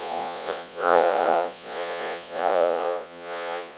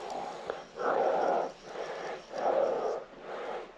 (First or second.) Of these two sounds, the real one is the second